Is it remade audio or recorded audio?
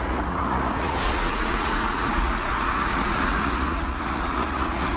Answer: remade